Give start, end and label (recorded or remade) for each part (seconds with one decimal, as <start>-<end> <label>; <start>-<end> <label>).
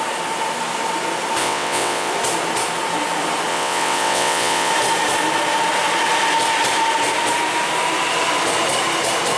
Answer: 0.0-1.4 recorded; 1.4-2.1 remade; 2.1-3.5 recorded; 3.5-4.7 remade; 4.7-9.4 recorded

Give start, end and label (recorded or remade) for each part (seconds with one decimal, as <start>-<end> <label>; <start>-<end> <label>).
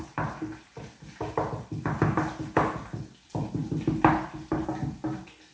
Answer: 0.0-5.5 recorded